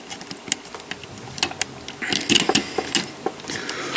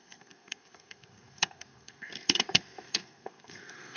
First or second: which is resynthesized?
second